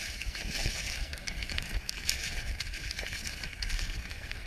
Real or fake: fake